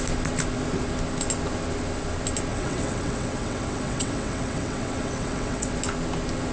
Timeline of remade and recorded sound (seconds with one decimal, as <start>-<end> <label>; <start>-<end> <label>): 0.0-2.5 recorded; 2.5-5.7 remade; 5.7-6.5 recorded